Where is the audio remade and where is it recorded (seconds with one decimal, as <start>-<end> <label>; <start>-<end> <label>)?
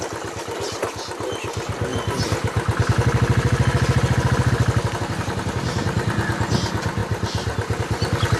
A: 0.0-7.0 recorded; 7.0-7.8 remade; 7.8-8.4 recorded